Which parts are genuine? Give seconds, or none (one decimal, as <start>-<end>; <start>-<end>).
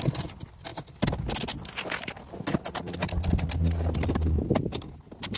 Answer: 0.0-5.4